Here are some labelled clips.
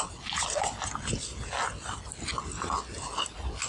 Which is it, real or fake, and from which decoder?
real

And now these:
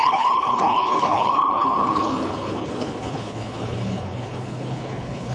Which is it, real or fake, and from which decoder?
fake, codec, HILCodec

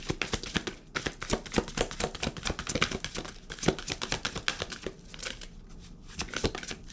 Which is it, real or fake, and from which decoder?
real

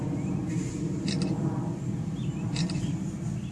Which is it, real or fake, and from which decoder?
real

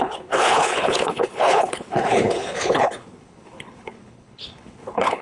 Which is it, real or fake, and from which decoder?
fake, codec, HILCodec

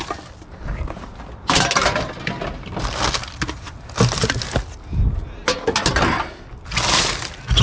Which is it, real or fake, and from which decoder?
real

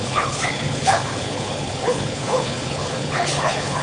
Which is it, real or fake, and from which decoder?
fake, codec, HILCodec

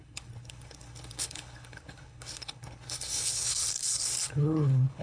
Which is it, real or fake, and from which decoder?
fake, codec, HILCodec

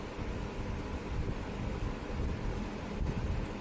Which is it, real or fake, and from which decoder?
real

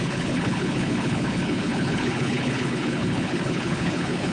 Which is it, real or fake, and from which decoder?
fake, codec, HILCodec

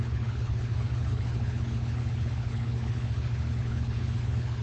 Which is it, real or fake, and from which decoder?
fake, codec, HILCodec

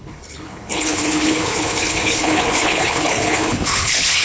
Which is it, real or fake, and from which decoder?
fake, codec, HILCodec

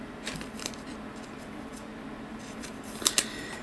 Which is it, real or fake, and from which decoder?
real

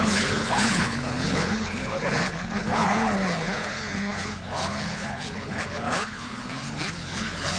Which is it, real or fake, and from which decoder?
fake, codec, HILCodec